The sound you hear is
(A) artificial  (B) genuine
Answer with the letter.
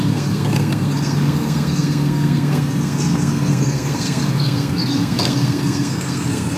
A